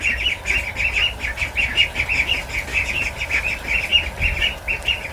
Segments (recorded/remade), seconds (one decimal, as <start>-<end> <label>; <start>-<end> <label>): 0.0-5.1 recorded